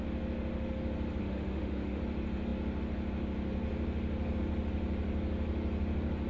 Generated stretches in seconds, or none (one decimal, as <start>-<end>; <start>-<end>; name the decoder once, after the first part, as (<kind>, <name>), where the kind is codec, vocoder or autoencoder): 1.2-2.0 (autoencoder, DAC-VAE)